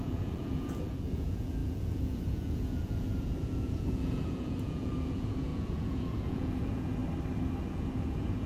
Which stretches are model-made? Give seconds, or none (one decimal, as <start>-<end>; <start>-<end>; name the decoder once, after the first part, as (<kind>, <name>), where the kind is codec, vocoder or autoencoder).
0.0-7.0 (vocoder, Vocos); 7.7-8.5